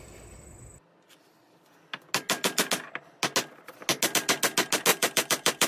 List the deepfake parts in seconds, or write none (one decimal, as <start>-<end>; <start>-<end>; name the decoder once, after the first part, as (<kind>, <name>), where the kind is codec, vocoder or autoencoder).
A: 4.9-5.7 (vocoder, BigVGAN v2)

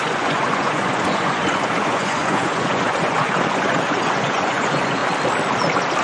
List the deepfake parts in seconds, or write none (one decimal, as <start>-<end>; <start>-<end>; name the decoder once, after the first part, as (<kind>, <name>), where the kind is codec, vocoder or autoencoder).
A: 0.0-5.0 (vocoder, Vocos)

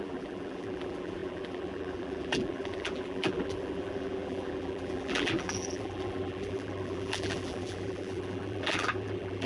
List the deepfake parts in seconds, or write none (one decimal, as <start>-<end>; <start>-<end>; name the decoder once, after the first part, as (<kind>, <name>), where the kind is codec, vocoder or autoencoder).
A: 0.0-9.5 (vocoder, BigVGAN v2)